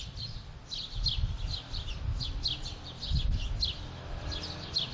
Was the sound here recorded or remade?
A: recorded